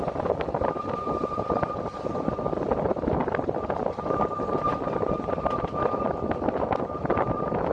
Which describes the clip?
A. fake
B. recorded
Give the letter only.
B